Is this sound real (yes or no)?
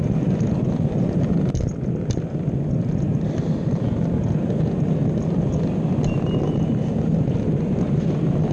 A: yes